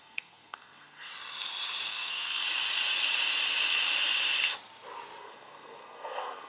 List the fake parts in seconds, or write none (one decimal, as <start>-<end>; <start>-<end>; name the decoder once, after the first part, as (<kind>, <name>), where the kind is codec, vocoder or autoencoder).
0.0-1.1 (codec, SNAC); 1.9-2.4; 5.2-6.5